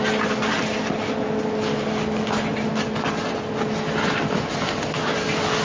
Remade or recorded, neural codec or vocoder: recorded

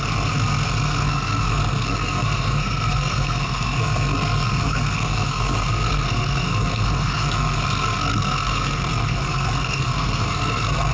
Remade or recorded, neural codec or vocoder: remade, codec, SNAC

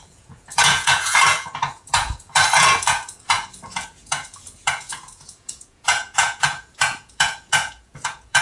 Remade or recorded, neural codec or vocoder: remade, vocoder, Vocos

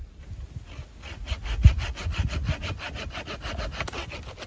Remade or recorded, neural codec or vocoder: recorded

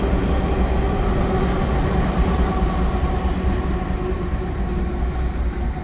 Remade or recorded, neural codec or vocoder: recorded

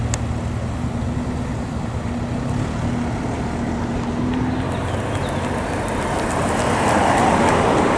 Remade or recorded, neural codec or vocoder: recorded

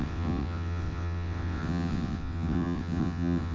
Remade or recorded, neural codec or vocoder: remade, vocoder, WaveNeXt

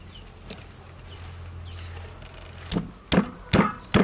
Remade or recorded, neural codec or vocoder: recorded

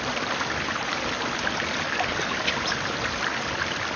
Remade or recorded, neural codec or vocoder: recorded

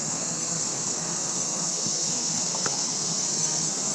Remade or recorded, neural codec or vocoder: remade, codec, SNAC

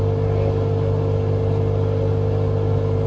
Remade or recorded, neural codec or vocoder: recorded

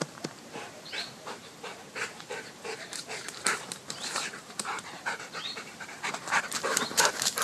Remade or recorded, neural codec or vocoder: remade, vocoder, BigVGAN v2